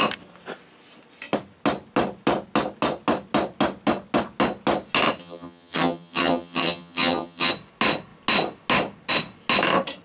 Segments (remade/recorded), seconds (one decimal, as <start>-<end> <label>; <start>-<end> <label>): 0.0-5.2 recorded; 5.2-7.5 remade; 7.5-10.0 recorded